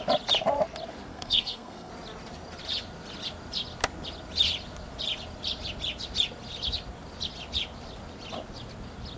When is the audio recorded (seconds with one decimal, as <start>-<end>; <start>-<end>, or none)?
0.0-1.1; 1.9-9.2